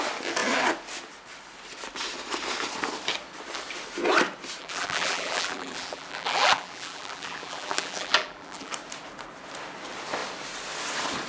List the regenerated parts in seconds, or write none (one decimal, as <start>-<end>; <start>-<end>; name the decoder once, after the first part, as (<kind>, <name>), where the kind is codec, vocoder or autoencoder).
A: 4.6-8.7 (vocoder, BigVGAN v2)